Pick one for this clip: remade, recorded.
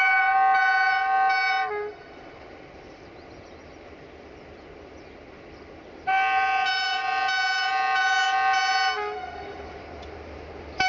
recorded